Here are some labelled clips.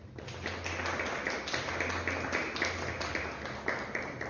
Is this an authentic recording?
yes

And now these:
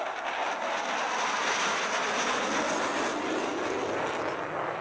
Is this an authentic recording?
yes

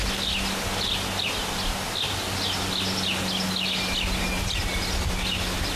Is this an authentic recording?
yes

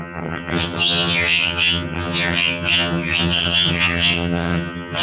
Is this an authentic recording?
no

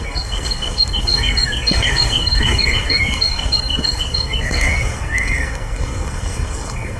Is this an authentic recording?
no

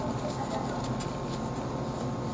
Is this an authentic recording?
yes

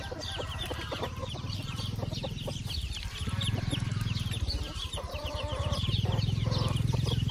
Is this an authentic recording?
no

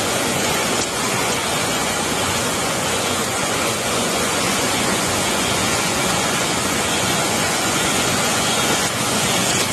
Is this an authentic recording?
no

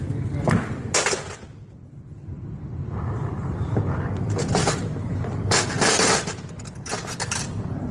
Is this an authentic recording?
yes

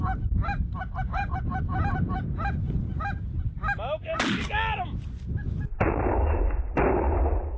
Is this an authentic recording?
yes